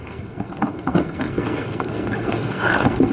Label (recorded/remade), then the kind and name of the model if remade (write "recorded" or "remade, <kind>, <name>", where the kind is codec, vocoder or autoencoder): remade, codec, SNAC